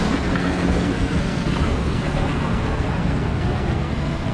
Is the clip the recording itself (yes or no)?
no